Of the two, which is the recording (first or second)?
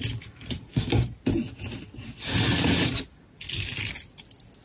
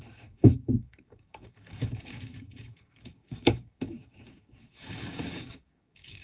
first